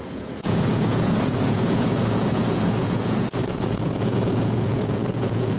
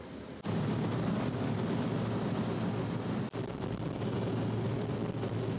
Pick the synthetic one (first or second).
first